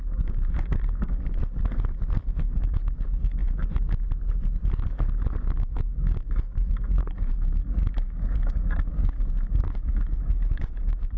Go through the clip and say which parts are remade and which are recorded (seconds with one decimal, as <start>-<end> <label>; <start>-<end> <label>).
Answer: 0.0-1.4 remade; 1.4-2.2 recorded; 2.2-3.4 remade; 3.4-5.4 recorded; 5.4-11.2 remade